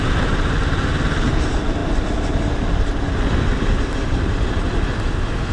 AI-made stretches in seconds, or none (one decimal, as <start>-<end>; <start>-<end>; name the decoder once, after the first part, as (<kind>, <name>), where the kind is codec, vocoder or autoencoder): none